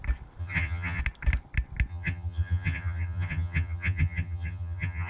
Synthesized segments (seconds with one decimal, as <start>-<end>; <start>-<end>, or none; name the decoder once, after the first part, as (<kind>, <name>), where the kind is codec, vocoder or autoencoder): 0.4-1.0 (vocoder, HiFi-GAN); 1.9-5.1